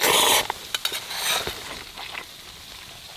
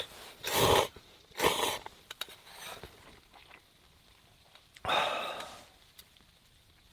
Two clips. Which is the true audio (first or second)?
first